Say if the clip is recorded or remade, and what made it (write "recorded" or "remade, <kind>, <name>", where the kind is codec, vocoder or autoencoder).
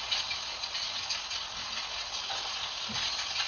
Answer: recorded